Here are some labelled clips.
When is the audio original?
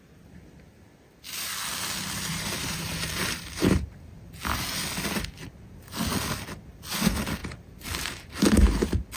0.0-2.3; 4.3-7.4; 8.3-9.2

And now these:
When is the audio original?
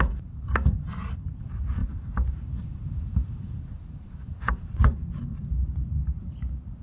5.3-6.2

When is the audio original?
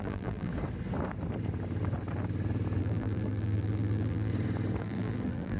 0.5-2.8; 4.3-4.8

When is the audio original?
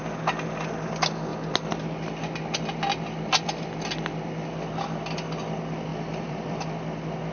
0.0-5.9; 6.6-7.3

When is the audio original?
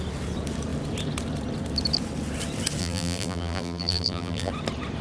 0.0-2.8; 4.5-5.0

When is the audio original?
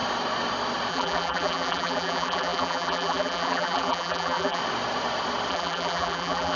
0.0-0.9; 4.6-5.5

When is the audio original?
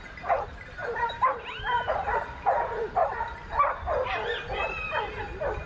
0.0-0.8; 1.5-5.7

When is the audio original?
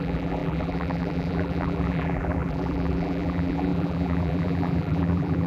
none